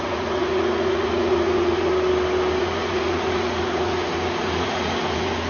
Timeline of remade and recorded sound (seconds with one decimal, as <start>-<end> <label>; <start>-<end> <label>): 0.0-1.9 remade; 1.9-2.6 recorded; 2.6-5.5 remade